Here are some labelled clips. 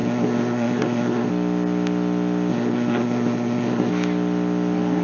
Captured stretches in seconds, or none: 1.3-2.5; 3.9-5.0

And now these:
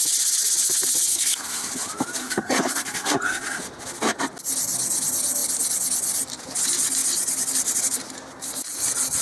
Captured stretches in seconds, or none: 0.0-1.1; 1.7-2.2; 3.6-9.2

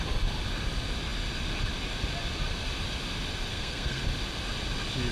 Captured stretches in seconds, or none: 0.0-3.5; 4.0-5.1

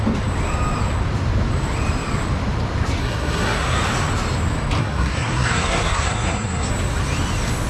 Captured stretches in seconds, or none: 0.0-3.0; 3.8-4.8; 6.7-7.7